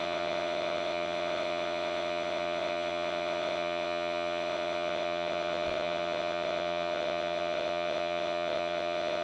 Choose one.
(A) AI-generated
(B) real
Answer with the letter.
A